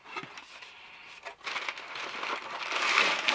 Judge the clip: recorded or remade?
recorded